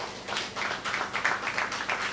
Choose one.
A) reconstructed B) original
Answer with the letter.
B